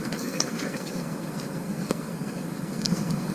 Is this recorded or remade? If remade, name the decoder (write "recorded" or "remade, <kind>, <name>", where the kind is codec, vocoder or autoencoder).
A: remade, codec, SNAC